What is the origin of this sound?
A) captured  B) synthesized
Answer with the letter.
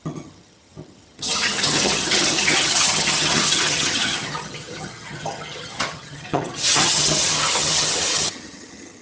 B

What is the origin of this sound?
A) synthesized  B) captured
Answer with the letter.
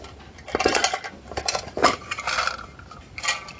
B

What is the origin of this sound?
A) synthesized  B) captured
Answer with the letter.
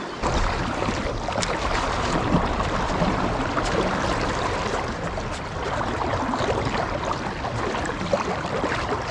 B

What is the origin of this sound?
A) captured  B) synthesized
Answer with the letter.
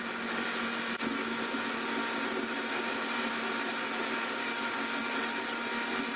A